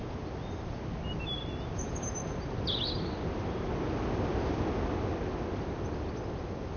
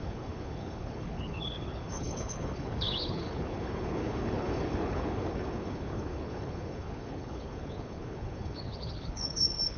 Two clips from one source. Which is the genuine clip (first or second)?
first